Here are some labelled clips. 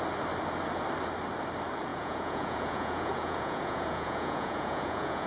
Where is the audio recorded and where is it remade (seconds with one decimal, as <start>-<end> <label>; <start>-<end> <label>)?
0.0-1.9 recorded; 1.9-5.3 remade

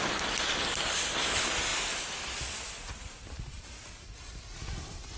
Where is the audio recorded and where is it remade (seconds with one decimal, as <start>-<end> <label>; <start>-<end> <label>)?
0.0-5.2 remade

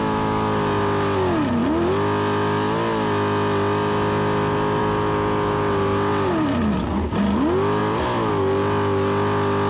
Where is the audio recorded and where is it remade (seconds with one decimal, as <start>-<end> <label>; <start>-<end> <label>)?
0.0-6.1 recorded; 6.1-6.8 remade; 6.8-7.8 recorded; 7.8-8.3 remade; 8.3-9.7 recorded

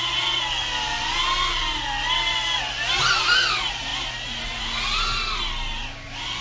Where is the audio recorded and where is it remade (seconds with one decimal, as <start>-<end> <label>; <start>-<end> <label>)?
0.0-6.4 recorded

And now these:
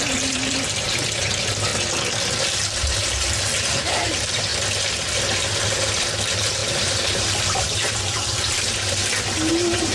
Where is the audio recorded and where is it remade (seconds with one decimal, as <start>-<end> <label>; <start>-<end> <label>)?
0.0-1.7 remade; 1.7-2.5 recorded; 2.5-4.5 remade; 4.5-5.6 recorded; 5.6-9.9 remade

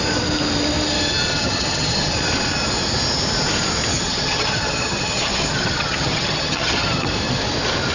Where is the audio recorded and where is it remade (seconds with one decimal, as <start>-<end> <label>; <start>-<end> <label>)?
0.0-1.3 recorded; 1.3-2.1 remade; 2.1-3.9 recorded; 3.9-7.1 remade; 7.1-7.9 recorded

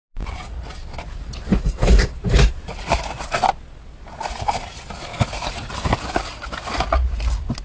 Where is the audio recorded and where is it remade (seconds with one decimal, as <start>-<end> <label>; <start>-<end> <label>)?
0.0-1.5 recorded; 1.5-3.2 remade; 3.2-5.1 recorded; 5.1-6.0 remade; 6.0-7.6 recorded